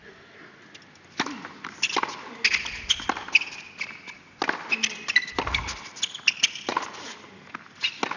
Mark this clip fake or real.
real